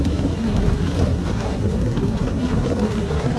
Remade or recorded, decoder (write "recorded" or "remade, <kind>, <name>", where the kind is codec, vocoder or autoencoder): remade, codec, SNAC